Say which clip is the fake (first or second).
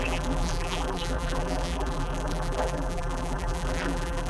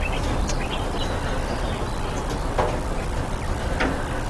first